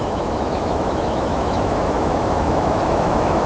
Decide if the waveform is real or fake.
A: fake